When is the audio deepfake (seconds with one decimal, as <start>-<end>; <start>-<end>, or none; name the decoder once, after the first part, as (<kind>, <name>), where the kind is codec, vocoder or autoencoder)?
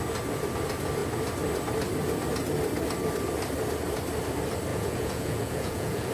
4.7-6.1 (vocoder, Vocos)